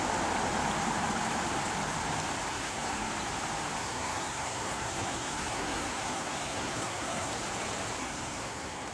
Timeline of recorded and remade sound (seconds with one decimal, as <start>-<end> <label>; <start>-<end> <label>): 0.0-2.5 recorded; 2.5-3.1 remade; 3.1-3.8 recorded; 3.8-7.3 remade; 7.3-8.0 recorded; 8.0-8.9 remade